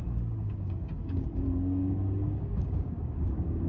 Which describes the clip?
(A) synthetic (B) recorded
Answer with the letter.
A